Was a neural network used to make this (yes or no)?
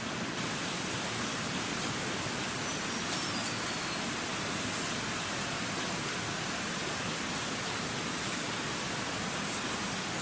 no